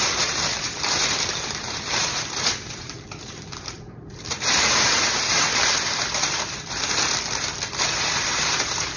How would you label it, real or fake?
fake